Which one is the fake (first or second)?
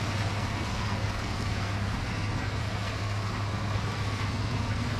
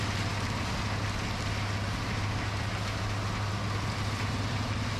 first